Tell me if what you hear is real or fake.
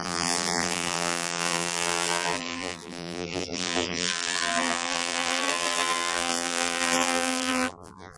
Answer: fake